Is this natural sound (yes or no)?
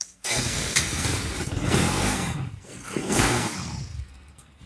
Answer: no